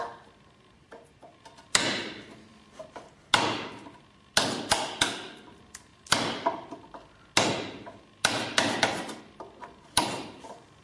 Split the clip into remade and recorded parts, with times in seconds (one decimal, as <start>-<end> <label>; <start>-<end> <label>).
0.0-10.8 recorded